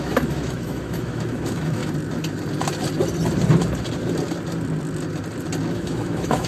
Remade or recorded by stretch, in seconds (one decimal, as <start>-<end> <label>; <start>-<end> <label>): 0.0-1.8 remade; 1.8-5.7 recorded; 5.7-6.5 remade